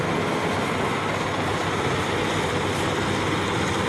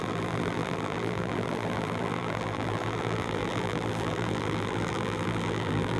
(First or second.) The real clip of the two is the first